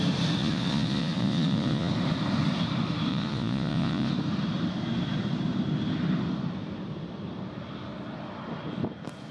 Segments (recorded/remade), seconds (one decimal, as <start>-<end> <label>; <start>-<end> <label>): 0.0-0.4 recorded; 0.4-1.9 remade; 1.9-3.1 recorded; 3.1-4.1 remade; 4.1-9.3 recorded